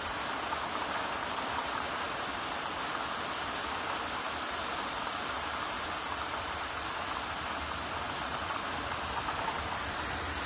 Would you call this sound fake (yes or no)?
yes